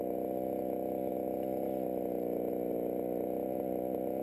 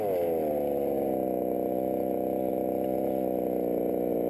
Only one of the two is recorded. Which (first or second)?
second